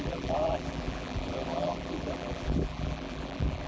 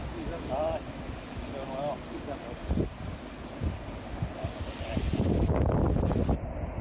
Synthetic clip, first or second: first